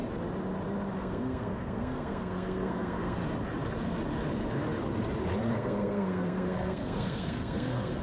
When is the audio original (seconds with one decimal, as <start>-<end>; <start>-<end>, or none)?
0.0-1.0; 3.2-5.5